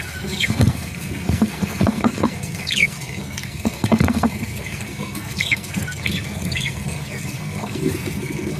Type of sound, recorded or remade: remade